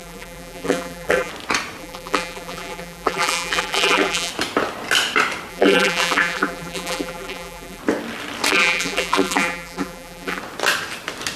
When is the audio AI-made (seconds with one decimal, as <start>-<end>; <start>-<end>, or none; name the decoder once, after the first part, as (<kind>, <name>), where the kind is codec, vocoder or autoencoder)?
0.0-1.3 (vocoder, BigVGAN v2); 1.8-4.3; 5.5-7.8; 8.5-10.4